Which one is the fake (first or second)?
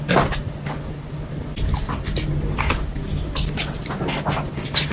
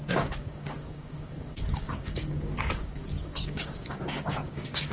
second